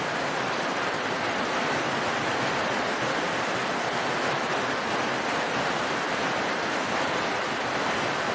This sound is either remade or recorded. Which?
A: remade